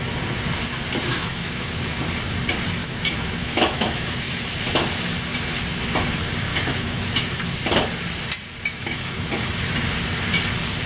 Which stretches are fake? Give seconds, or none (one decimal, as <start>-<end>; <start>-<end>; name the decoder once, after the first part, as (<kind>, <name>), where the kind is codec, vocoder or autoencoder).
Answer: 1.1-1.7 (autoencoder, DAC-VAE); 2.8-4.4; 6.5-7.4; 8.7-9.3